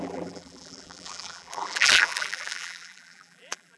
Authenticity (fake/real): fake